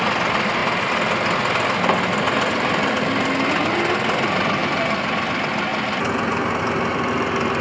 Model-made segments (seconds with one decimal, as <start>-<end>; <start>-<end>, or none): none